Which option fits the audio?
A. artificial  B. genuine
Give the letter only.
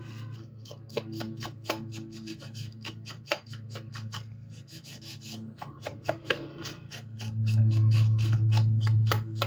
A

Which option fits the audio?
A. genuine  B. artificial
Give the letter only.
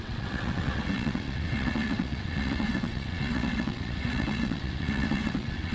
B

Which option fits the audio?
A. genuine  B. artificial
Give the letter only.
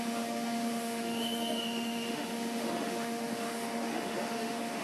B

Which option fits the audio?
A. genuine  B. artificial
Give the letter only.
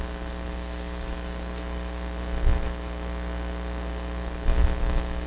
A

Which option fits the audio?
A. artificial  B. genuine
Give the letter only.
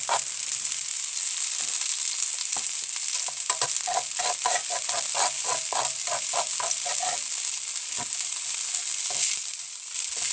B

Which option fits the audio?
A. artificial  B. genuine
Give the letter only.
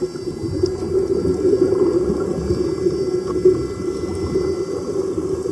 B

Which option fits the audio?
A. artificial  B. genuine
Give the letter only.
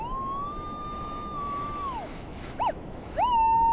A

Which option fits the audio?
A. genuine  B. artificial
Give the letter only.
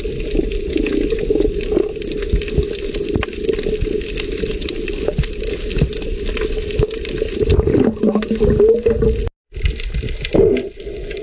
A